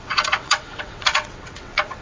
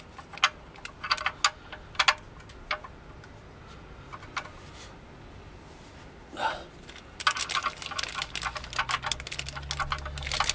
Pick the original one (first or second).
second